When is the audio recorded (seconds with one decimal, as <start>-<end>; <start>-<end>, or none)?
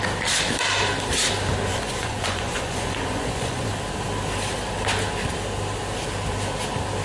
0.0-1.7; 3.7-7.0